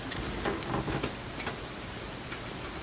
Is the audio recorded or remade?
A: recorded